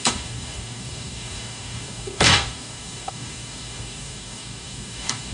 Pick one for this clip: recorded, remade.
remade